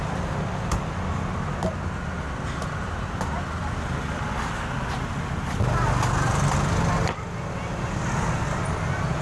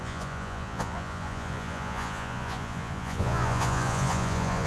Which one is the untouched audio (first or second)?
first